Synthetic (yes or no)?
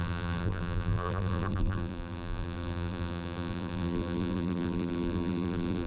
yes